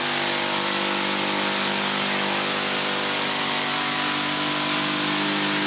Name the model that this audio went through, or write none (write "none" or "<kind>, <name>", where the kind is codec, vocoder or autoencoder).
none